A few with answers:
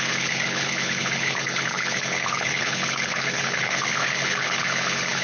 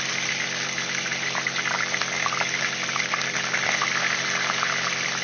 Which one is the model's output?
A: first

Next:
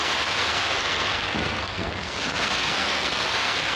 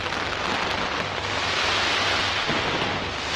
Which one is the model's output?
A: first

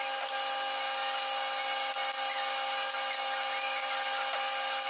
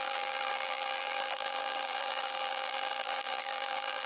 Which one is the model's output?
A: second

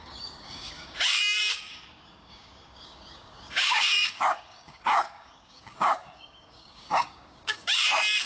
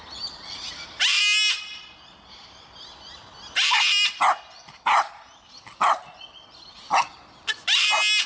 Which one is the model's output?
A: first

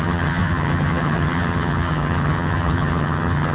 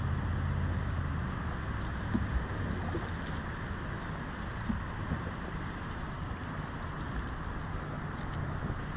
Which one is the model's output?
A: first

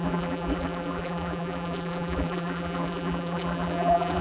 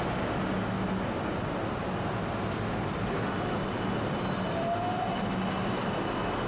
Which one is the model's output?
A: first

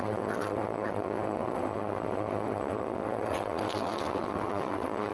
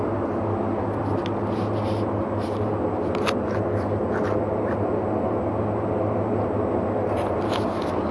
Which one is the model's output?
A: first